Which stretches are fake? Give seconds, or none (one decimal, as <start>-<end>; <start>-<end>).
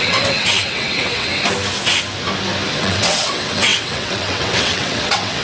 0.0-1.3; 2.8-5.4